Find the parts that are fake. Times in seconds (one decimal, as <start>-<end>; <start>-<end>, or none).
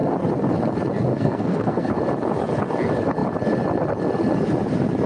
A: 1.1-1.9